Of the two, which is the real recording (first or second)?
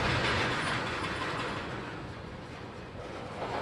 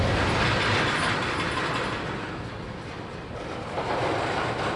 second